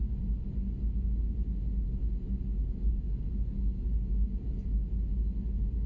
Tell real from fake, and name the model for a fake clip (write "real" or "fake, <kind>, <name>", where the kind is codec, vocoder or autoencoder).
real